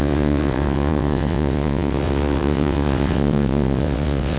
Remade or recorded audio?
remade